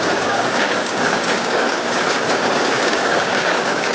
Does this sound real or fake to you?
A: fake